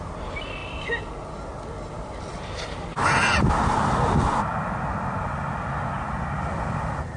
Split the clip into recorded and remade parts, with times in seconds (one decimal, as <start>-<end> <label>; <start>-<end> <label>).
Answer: 0.0-7.2 recorded